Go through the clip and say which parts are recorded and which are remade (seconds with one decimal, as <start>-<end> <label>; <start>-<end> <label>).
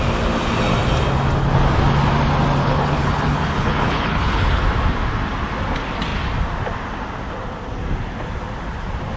0.0-2.6 recorded; 2.6-4.6 remade; 4.6-9.2 recorded